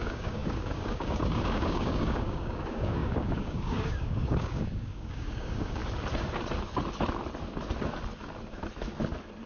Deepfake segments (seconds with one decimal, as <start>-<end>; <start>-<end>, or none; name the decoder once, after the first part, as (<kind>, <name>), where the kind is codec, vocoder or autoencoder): 0.0-5.8 (codec, DAC)